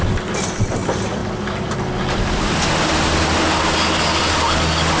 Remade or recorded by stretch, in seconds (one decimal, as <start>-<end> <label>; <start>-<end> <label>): 0.0-5.0 recorded